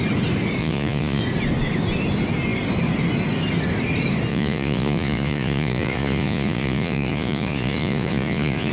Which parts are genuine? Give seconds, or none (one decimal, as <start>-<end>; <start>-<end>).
0.0-0.6; 1.2-4.3

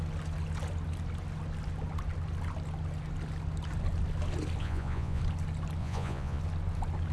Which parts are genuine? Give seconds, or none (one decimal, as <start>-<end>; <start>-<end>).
0.0-4.6; 5.2-5.8; 6.4-7.1

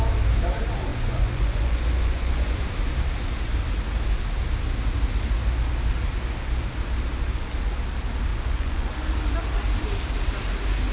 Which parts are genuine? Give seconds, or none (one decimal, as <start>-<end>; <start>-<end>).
0.0-0.9; 2.6-8.3; 8.9-10.9

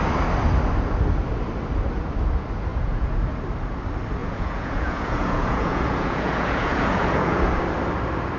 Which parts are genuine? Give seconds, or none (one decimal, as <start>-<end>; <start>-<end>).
0.0-2.7; 3.2-4.2; 7.6-8.4

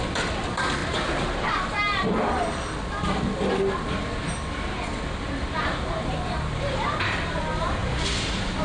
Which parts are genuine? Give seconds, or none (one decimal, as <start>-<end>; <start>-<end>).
0.0-8.6

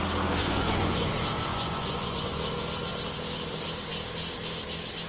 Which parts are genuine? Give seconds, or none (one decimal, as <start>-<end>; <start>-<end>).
0.0-0.4; 1.1-1.5; 2.4-5.1

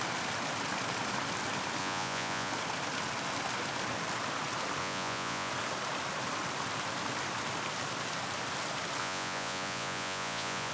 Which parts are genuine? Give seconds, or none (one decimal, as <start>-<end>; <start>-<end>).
0.0-1.8; 2.5-4.8; 5.5-9.0

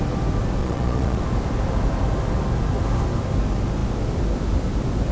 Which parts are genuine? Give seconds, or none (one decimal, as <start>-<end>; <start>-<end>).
0.0-0.6; 1.2-5.1